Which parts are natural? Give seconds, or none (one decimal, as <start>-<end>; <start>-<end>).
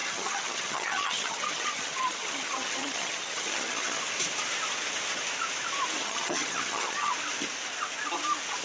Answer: 4.0-6.0; 7.1-8.6